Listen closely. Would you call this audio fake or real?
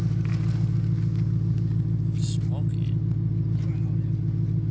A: real